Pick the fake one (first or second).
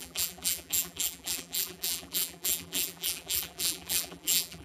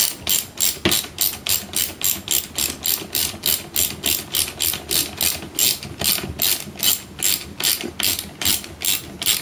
first